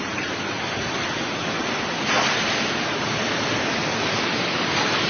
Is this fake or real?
real